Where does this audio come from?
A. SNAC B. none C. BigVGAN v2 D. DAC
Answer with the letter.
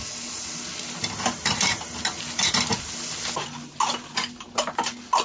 B